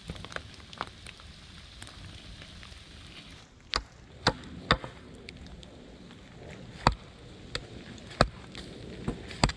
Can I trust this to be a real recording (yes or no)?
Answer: yes